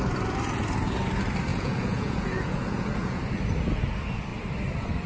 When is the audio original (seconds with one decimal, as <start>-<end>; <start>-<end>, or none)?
0.0-1.5; 3.2-5.1